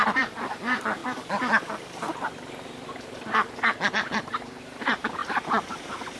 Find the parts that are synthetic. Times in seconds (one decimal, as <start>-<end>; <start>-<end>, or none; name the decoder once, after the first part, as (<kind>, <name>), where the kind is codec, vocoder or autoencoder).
0.0-1.0 (vocoder, BigVGAN v2); 3.9-6.2